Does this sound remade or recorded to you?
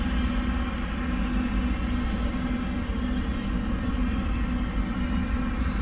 recorded